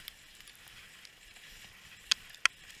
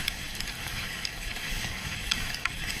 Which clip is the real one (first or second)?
first